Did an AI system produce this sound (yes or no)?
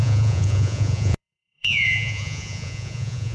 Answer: yes